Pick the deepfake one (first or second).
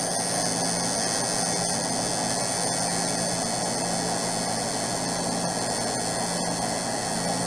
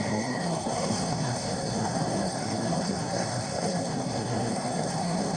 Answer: second